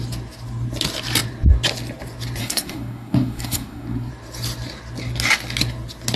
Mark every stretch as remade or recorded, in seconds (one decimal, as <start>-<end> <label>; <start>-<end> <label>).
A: 0.0-2.4 recorded; 2.4-4.1 remade; 4.1-6.2 recorded